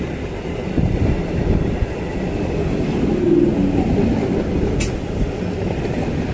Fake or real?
real